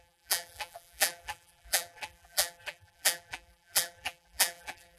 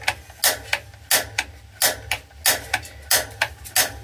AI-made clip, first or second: first